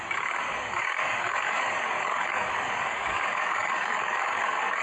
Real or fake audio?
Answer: fake